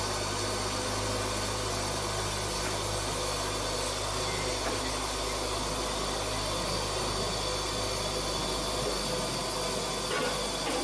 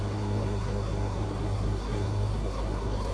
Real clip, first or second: first